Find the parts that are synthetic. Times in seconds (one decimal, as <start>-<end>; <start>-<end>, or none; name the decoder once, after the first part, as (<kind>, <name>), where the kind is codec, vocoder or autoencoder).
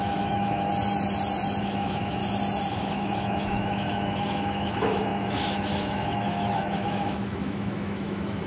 0.0-0.7 (autoencoder, DAC-VAE); 1.6-2.2; 2.7-8.5